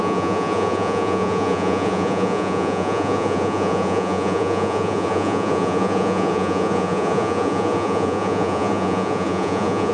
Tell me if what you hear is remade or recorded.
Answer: remade